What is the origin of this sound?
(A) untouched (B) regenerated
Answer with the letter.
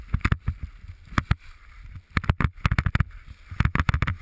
A